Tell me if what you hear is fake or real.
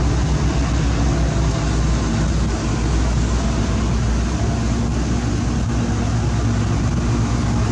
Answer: real